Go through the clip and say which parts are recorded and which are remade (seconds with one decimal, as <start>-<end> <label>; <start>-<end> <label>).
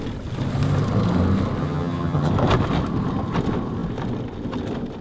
0.0-1.6 recorded; 1.6-2.3 remade; 2.3-5.0 recorded